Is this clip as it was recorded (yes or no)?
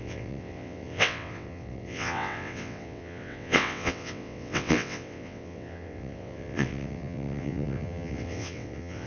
no